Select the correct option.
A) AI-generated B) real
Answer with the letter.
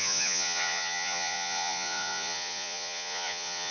A